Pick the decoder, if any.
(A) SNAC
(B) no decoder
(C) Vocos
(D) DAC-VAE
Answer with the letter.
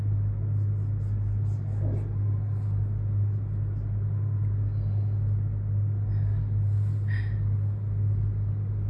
B